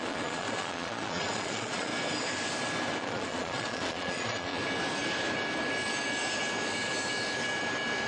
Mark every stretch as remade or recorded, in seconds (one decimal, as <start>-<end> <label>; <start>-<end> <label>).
0.0-1.9 remade; 1.9-3.0 recorded; 3.0-4.6 remade; 4.6-8.1 recorded